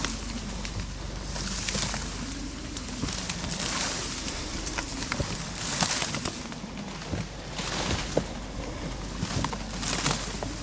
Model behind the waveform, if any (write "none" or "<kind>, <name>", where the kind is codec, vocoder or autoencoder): none